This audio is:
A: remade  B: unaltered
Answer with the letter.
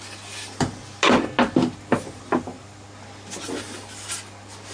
B